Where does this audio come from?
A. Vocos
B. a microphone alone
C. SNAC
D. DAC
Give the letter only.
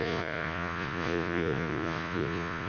A